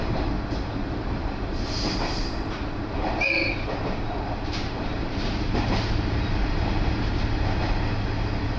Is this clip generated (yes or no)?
yes